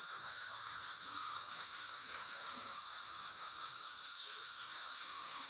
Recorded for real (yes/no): no